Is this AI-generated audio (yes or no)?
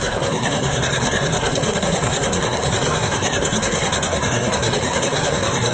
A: yes